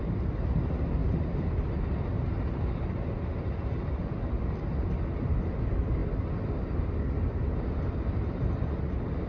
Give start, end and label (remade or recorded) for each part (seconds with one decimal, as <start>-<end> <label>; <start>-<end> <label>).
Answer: 0.0-9.3 recorded